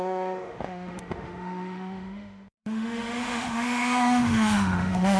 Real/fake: fake